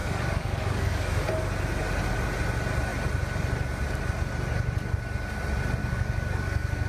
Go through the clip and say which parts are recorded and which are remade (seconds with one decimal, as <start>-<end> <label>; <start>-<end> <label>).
0.0-1.3 remade; 1.3-5.8 recorded; 5.8-6.9 remade